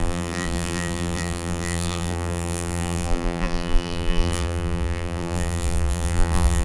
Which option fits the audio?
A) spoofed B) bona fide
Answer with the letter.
A